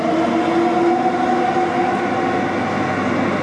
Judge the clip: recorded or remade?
recorded